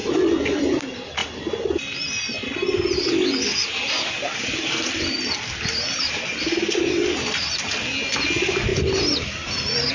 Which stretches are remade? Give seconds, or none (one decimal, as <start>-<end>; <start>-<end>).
none

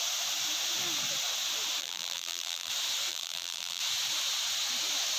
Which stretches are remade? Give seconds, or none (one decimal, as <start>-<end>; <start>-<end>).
1.8-2.7; 3.1-3.8

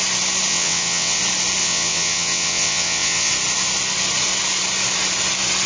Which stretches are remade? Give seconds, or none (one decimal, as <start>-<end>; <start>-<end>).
0.5-1.2; 1.6-3.3

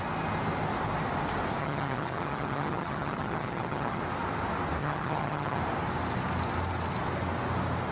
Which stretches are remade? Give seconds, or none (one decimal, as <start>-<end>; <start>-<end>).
1.6-4.0; 4.8-5.6